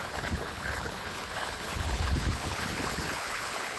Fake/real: fake